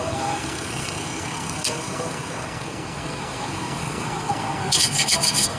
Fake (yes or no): yes